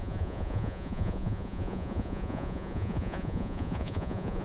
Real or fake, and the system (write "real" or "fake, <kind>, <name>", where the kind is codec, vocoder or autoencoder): fake, vocoder, Vocos